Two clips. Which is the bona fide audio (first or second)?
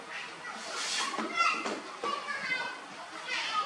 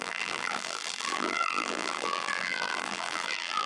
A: first